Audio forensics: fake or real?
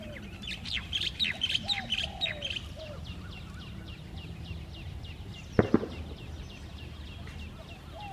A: real